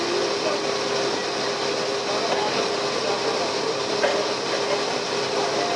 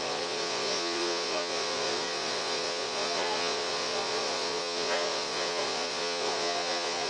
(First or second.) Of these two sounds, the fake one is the second